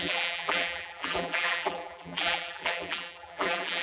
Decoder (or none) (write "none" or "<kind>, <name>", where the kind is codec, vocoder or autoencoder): vocoder, BigVGAN v2